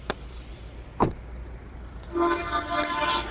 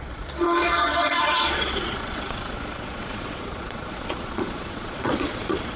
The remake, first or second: second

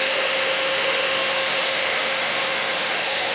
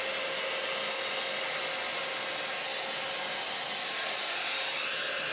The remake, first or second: first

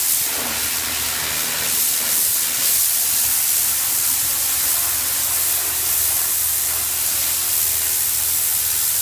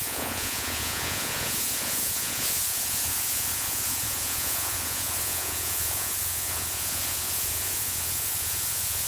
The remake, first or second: second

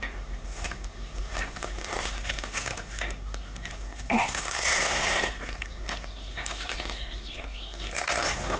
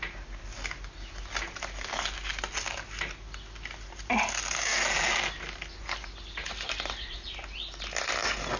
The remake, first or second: first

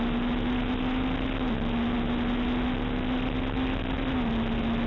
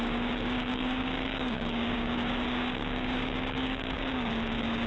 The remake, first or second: second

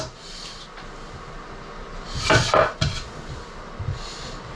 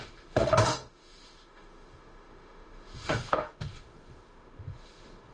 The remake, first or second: second